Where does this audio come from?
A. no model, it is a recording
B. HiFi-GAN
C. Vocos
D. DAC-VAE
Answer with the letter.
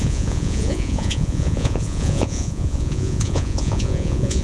C